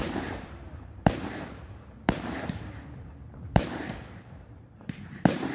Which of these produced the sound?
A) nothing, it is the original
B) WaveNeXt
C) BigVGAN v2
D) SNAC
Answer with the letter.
C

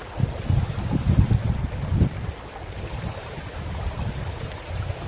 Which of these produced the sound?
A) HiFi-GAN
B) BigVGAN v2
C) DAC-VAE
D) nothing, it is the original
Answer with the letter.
B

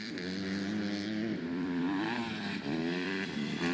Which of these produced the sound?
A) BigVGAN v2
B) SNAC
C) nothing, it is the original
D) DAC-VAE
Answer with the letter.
A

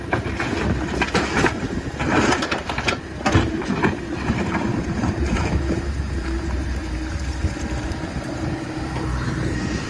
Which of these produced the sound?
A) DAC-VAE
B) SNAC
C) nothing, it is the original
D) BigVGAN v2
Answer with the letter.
D